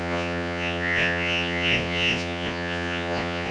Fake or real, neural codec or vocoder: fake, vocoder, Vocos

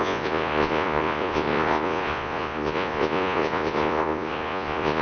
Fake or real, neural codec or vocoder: fake, vocoder, Vocos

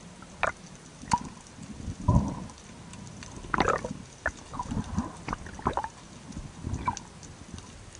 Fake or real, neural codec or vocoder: real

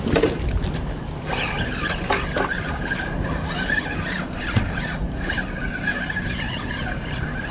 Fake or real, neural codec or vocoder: real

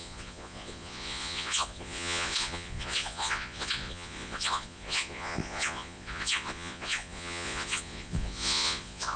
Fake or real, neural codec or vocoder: fake, vocoder, Vocos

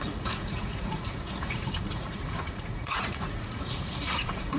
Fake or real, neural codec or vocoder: fake, vocoder, Vocos